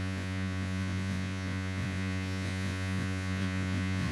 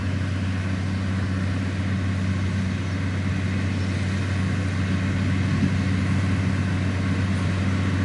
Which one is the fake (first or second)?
first